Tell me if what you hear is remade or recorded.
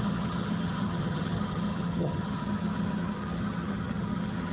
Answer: remade